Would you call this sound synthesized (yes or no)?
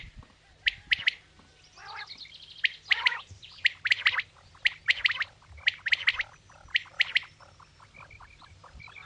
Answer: no